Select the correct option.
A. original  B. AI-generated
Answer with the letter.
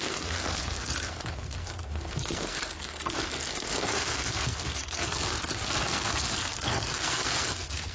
B